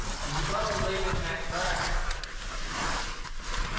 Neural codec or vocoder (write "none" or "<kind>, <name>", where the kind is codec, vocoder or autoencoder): none